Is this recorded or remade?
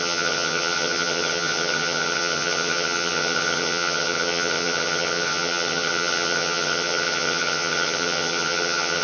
remade